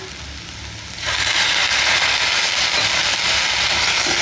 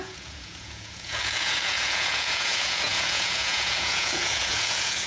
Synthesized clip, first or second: second